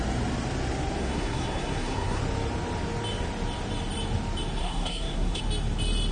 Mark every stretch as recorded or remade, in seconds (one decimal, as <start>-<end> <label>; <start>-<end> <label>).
0.0-1.0 recorded; 1.0-2.2 remade; 2.2-4.6 recorded; 4.6-5.4 remade; 5.4-6.1 recorded